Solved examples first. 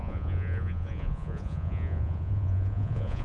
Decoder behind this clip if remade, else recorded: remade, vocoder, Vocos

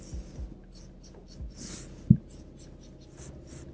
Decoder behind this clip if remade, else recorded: recorded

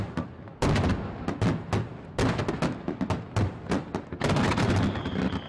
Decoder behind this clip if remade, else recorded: recorded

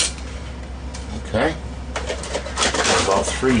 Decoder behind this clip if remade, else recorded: recorded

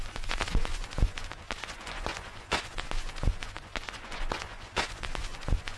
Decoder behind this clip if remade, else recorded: remade, vocoder, Vocos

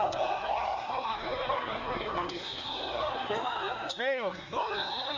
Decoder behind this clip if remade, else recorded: remade, codec, SNAC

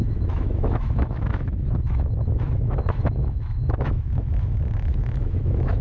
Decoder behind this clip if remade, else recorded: remade, autoencoder, DAC-VAE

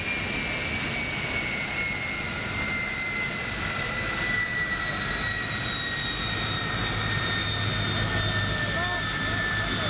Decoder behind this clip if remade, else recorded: recorded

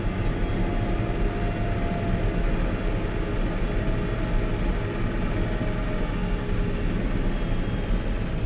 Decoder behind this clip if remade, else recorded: recorded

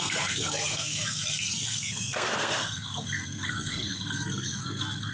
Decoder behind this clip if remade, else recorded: remade, codec, SNAC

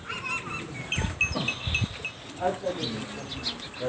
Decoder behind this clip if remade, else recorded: recorded